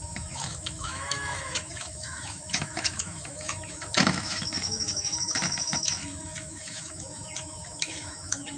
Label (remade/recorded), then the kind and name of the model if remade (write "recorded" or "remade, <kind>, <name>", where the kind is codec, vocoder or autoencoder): remade, autoencoder, DAC-VAE